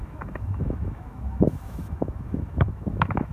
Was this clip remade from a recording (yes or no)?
yes